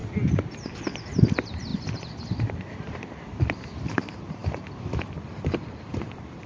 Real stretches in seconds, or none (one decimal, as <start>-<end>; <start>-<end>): 0.0-1.0